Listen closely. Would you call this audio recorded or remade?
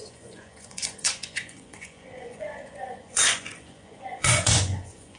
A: remade